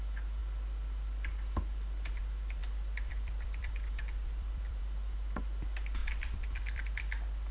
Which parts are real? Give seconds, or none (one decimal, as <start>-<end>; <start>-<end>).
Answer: 0.0-2.6; 4.8-6.0; 7.0-7.5